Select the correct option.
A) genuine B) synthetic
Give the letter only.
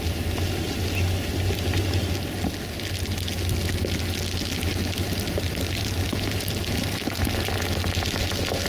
A